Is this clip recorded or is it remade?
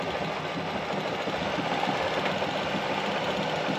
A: recorded